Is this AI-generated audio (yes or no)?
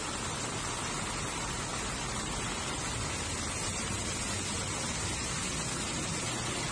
no